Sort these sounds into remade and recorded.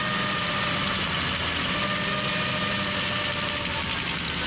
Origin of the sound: recorded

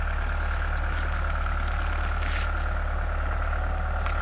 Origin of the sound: recorded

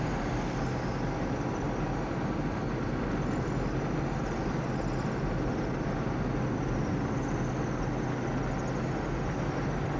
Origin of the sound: recorded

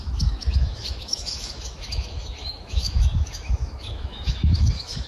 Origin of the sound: remade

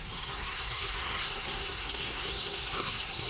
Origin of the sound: remade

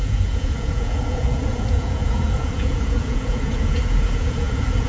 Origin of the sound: remade